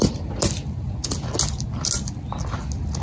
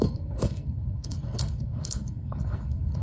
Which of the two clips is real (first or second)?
first